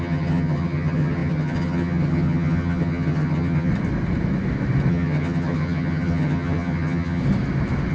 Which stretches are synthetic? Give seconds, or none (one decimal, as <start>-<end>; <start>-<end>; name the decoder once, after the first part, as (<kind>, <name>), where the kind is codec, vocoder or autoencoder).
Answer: 0.0-3.7 (vocoder, HiFi-GAN); 4.9-7.2